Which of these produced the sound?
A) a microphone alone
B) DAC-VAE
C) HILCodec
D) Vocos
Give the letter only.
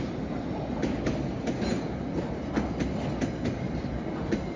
A